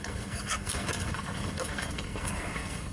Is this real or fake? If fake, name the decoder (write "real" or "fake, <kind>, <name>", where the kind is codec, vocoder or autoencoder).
fake, codec, SNAC